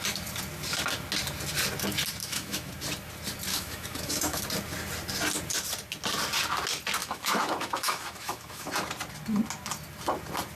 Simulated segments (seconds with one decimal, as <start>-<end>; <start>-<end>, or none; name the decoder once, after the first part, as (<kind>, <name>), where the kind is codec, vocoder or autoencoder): 2.2-2.7 (autoencoder, DAC-VAE); 3.5-4.4; 7.0-8.7